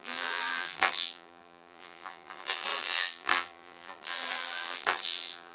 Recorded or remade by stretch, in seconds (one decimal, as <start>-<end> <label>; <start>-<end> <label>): 0.0-5.5 remade